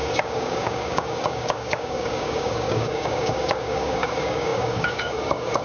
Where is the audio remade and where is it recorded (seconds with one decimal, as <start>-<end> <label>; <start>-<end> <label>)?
0.0-5.6 remade